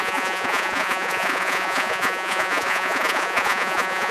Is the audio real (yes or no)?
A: no